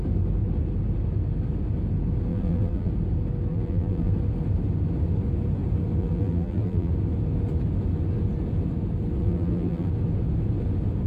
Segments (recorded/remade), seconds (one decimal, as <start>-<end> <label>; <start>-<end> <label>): 0.0-2.3 recorded; 2.3-2.9 remade; 2.9-3.5 recorded; 3.5-4.1 remade; 4.1-6.0 recorded; 6.0-6.9 remade; 6.9-9.2 recorded; 9.2-9.9 remade; 9.9-11.1 recorded